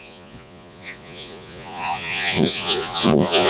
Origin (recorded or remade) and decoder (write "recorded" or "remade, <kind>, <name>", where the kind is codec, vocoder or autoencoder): remade, vocoder, Vocos